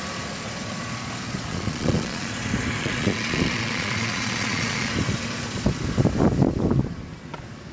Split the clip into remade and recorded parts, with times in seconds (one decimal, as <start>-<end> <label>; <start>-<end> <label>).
0.0-1.5 recorded; 1.5-2.3 remade; 2.3-2.8 recorded; 2.8-4.9 remade; 4.9-7.7 recorded